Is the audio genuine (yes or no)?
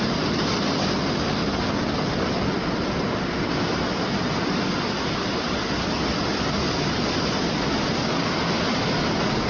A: yes